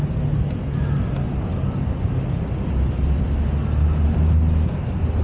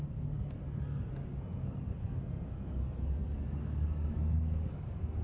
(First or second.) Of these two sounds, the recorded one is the first